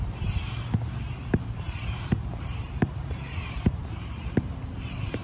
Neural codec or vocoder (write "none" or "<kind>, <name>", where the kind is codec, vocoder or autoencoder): vocoder, BigVGAN v2